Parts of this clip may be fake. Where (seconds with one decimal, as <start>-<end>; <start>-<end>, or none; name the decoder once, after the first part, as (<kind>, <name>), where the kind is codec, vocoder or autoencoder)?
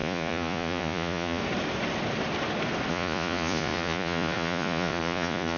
0.0-1.4 (vocoder, Vocos); 2.9-5.6